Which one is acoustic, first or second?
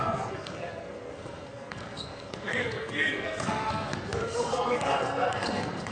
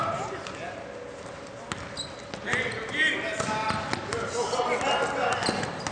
second